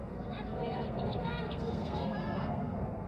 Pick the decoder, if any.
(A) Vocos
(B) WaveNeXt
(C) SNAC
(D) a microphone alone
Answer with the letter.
C